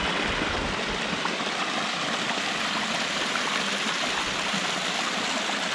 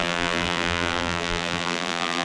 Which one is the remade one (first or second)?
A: second